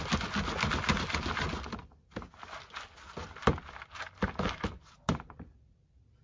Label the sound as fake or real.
real